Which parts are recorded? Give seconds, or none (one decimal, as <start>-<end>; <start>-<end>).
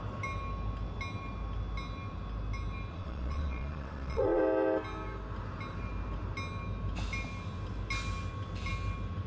0.0-2.9; 4.4-9.3